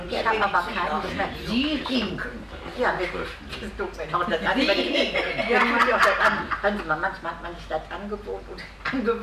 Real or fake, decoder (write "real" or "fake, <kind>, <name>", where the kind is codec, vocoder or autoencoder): real